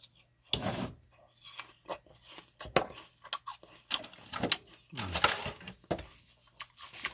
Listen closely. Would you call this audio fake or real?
real